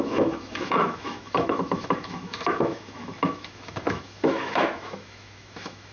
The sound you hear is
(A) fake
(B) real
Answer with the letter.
A